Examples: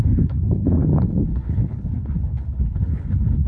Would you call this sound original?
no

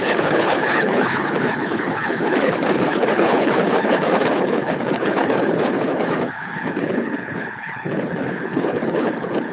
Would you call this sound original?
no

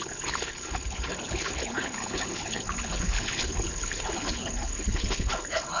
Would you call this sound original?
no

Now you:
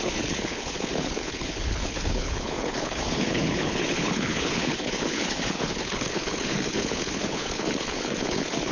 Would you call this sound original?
no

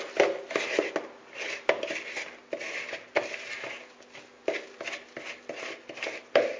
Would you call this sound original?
yes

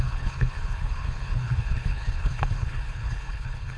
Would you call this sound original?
no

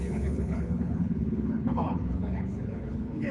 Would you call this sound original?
no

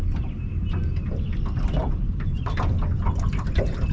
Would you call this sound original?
yes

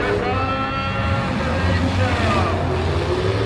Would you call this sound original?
yes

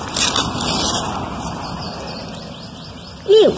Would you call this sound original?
yes